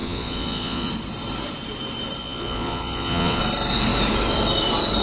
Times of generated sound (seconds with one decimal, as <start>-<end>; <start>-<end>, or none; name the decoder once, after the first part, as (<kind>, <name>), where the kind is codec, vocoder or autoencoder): 0.0-0.9 (vocoder, Vocos); 2.2-3.4